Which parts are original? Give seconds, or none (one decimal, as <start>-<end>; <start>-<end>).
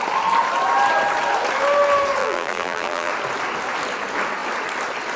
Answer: 0.0-2.2; 3.1-5.2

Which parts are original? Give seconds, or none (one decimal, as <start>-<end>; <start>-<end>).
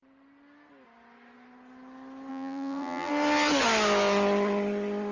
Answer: 0.0-2.3; 3.1-5.1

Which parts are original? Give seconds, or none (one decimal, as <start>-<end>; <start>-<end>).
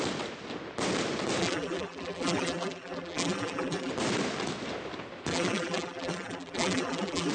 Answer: 0.0-1.4; 3.9-5.3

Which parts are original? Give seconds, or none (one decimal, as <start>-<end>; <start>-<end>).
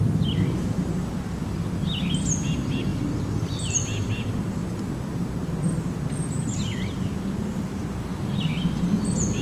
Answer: 0.0-2.9; 4.8-5.4; 7.8-9.4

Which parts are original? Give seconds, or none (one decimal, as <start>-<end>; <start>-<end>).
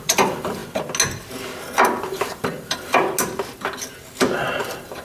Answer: 0.6-2.0; 3.0-4.6